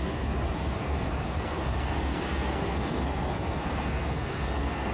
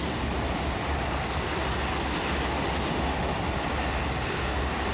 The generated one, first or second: first